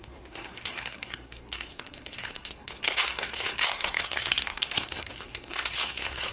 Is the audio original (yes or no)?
no